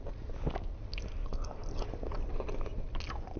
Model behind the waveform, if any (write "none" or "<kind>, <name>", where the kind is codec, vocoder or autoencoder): none